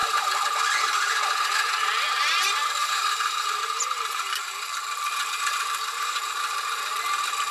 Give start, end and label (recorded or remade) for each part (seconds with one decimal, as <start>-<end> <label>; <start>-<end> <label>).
0.0-2.8 recorded; 2.8-7.0 remade; 7.0-7.5 recorded